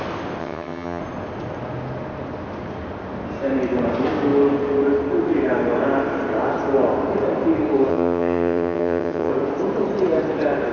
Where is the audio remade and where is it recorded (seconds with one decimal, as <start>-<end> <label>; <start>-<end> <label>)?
0.0-0.4 recorded; 0.4-1.0 remade; 1.0-7.9 recorded; 7.9-9.3 remade; 9.3-10.7 recorded